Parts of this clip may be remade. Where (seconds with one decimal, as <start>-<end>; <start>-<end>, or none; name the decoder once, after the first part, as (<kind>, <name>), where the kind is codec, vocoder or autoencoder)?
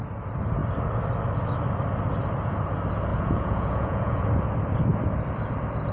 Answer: 3.1-4.3 (vocoder, Vocos)